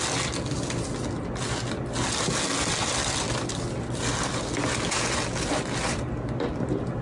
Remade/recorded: recorded